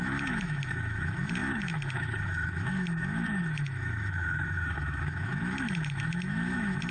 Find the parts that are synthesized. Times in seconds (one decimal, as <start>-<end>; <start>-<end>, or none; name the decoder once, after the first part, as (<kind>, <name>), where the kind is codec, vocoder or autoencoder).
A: 0.0-6.9 (autoencoder, DAC-VAE)